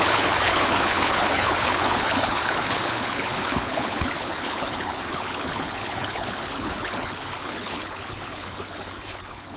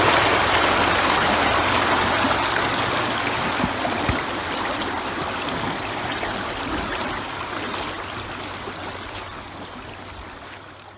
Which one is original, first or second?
second